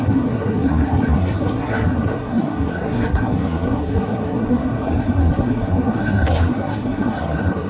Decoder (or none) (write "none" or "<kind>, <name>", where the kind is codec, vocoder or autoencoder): codec, SNAC